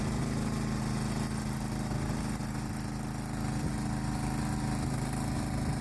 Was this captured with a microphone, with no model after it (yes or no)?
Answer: yes